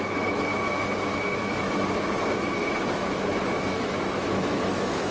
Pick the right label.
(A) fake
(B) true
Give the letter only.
A